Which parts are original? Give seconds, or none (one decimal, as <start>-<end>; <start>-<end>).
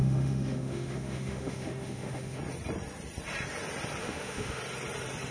2.4-4.0; 4.6-5.3